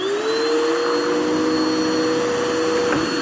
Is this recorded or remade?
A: recorded